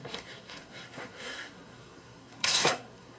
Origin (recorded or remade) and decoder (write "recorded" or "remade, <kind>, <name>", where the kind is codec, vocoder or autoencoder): remade, codec, SNAC